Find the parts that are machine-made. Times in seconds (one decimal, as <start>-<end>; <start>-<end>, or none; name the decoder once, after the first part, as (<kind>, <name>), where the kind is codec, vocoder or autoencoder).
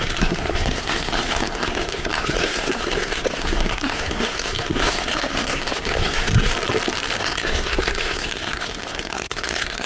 0.0-6.5 (codec, SNAC); 7.2-9.9